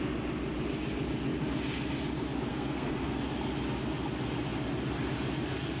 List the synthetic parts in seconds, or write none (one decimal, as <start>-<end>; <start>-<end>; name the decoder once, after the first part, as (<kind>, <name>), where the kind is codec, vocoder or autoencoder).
2.5-3.2 (codec, SNAC)